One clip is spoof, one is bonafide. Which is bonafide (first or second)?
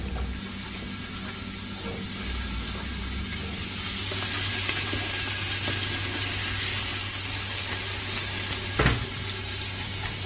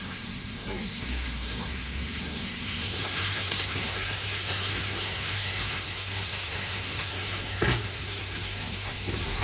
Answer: first